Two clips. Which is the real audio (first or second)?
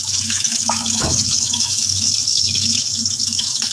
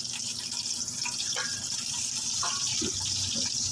second